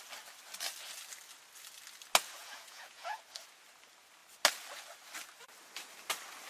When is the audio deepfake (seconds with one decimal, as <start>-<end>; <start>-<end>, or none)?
2.4-3.2